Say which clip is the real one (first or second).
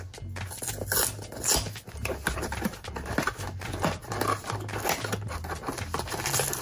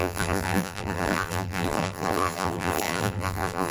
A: first